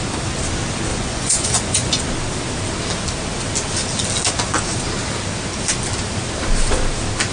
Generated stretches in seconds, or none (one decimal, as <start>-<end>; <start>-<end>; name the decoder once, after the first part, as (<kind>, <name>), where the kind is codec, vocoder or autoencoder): 0.9-2.0 (vocoder, Vocos)